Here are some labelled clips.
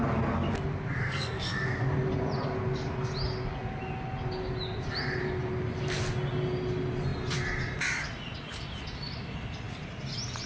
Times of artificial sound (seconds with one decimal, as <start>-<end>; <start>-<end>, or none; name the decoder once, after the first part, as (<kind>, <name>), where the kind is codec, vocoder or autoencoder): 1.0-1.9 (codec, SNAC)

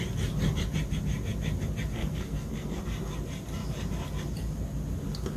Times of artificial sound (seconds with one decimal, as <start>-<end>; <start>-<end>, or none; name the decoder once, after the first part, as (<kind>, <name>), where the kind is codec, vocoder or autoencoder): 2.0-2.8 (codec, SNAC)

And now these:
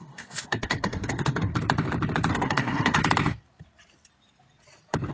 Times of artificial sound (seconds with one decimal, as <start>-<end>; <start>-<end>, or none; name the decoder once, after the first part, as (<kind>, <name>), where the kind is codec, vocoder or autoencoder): 0.0-1.5 (codec, SNAC); 2.3-3.0

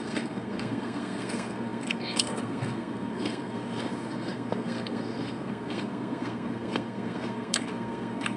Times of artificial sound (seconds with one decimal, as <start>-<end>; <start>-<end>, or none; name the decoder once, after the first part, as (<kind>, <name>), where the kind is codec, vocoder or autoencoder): 0.0-8.4 (codec, SNAC)

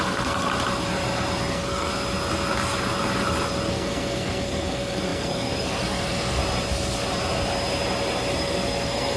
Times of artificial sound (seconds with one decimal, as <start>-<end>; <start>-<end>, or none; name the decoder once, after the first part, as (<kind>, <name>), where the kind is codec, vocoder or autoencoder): 0.0-0.5 (codec, SNAC); 1.5-1.9; 3.7-6.4; 8.3-9.2

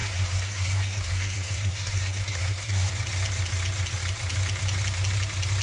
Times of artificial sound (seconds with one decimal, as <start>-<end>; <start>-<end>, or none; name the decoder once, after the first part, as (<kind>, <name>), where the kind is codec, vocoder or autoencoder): 0.0-2.9 (codec, SNAC)